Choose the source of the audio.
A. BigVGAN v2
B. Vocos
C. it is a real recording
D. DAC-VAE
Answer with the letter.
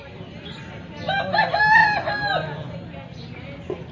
C